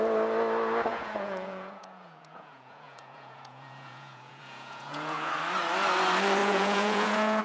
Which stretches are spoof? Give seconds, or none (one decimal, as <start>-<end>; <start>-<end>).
0.9-5.3; 6.4-7.4